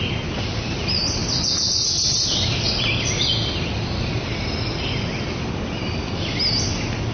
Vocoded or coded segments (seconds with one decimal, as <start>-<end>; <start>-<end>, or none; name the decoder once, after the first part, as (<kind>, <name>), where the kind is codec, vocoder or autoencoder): 1.2-5.5 (vocoder, BigVGAN v2)